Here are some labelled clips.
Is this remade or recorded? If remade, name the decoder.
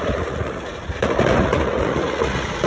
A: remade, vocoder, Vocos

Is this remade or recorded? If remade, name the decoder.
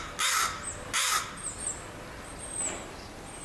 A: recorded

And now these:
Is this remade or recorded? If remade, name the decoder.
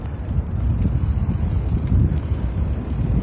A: recorded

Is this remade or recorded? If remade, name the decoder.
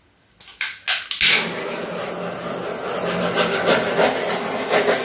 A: recorded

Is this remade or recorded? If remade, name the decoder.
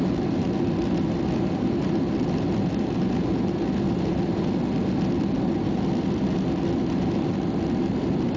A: recorded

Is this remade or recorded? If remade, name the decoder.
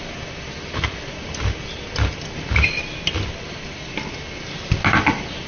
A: recorded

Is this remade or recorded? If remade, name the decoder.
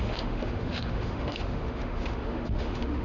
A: remade, autoencoder, DAC-VAE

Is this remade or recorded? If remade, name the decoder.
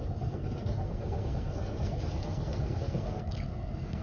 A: remade, codec, SNAC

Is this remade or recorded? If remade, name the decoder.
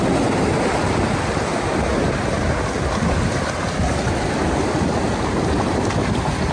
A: recorded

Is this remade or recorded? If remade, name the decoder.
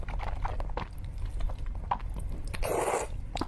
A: recorded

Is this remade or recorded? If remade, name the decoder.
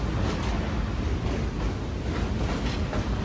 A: recorded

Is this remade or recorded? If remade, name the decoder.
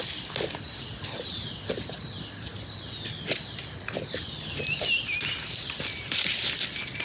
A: recorded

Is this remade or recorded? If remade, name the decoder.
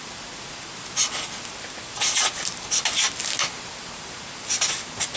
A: recorded